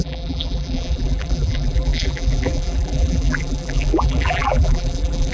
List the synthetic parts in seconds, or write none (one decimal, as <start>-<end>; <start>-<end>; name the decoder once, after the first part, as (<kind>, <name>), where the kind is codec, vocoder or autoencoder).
0.0-5.3 (vocoder, BigVGAN v2)